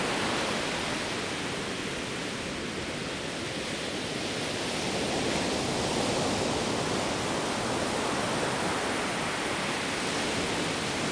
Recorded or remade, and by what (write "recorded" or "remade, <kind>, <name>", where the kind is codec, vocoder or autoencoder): recorded